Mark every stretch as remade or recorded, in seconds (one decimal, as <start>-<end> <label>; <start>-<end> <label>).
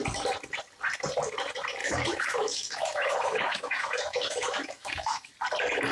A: 0.0-1.8 recorded; 1.8-5.3 remade; 5.3-5.9 recorded